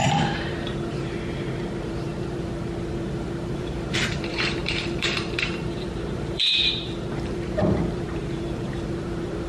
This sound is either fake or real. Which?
fake